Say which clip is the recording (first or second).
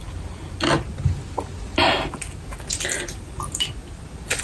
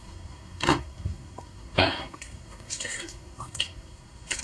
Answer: first